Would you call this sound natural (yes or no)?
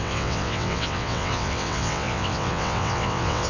no